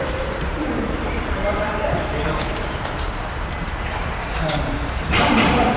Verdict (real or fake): fake